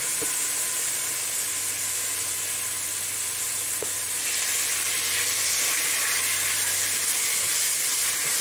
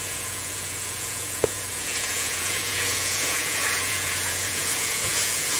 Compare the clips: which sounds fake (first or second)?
second